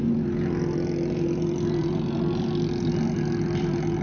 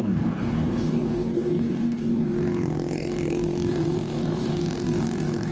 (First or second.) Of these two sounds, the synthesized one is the second